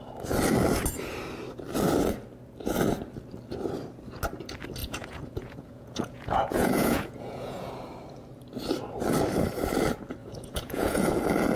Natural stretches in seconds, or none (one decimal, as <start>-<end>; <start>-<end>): 0.0-4.8; 7.7-10.2; 11.1-11.6